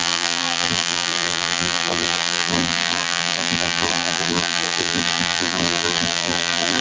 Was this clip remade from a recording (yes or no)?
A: yes